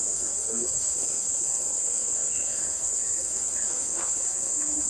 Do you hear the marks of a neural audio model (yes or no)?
yes